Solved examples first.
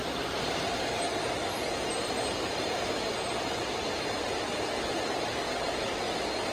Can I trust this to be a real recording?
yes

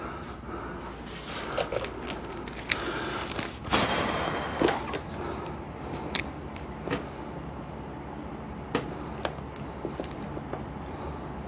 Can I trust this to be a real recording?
yes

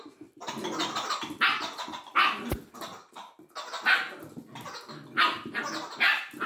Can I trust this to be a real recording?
yes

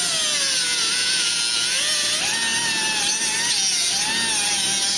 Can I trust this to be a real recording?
yes